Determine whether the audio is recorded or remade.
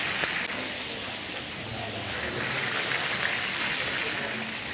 recorded